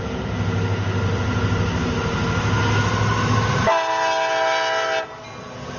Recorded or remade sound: recorded